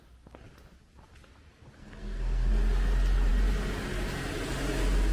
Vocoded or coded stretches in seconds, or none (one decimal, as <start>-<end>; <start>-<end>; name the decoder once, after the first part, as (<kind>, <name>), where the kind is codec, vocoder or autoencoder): 1.8-2.5 (codec, SNAC)